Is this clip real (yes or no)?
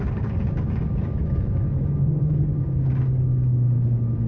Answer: no